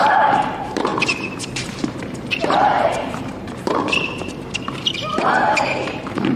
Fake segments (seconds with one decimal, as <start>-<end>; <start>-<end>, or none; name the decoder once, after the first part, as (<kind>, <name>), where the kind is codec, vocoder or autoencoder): 0.0-6.4 (vocoder, BigVGAN v2)